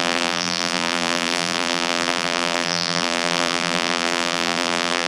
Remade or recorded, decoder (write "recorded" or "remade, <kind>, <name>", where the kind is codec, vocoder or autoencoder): remade, vocoder, BigVGAN v2